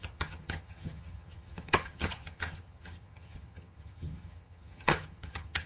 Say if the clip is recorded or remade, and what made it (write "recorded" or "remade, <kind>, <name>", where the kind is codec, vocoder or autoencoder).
remade, vocoder, HiFi-GAN